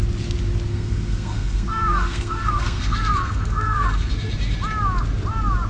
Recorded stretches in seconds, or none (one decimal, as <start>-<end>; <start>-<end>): 0.0-0.7; 4.1-5.7